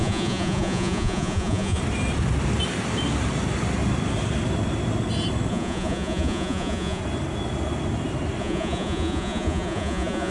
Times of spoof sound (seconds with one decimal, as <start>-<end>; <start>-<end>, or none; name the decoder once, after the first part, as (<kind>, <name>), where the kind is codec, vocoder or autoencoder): 0.0-1.8 (vocoder, Vocos); 5.5-7.0; 8.4-10.3